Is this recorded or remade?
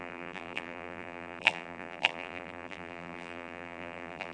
remade